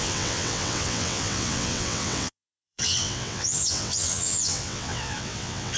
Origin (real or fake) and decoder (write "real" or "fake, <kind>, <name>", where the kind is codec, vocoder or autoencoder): fake, vocoder, WaveNeXt